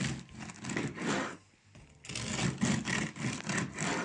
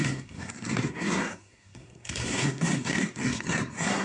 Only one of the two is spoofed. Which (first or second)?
second